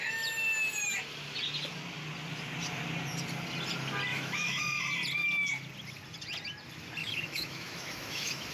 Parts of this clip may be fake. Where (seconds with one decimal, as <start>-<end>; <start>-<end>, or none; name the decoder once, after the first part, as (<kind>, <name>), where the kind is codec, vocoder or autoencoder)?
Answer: 4.1-4.6 (autoencoder, DAC-VAE); 7.0-8.5